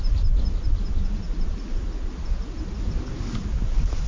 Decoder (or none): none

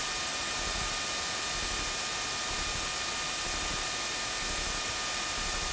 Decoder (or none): none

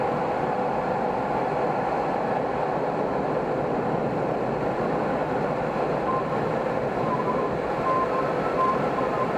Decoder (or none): none